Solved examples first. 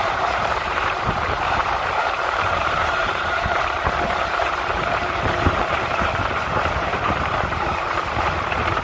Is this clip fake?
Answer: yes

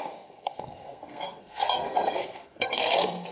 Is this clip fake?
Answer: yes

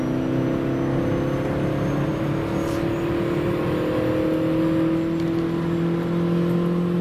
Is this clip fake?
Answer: no